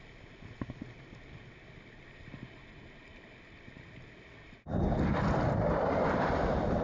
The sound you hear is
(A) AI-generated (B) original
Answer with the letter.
B